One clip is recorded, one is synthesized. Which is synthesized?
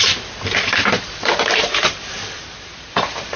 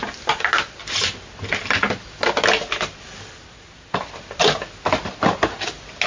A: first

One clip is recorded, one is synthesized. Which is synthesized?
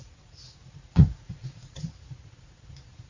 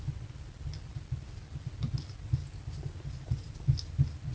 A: first